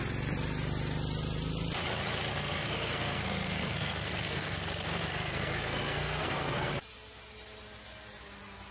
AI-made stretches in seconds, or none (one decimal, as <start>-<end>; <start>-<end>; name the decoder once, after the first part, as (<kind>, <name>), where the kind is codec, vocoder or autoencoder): 2.3-6.7 (codec, SNAC)